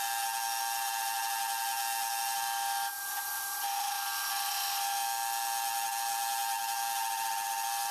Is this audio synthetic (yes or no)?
no